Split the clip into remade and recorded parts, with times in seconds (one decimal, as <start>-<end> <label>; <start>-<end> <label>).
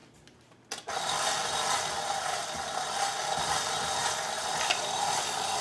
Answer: 0.0-5.6 recorded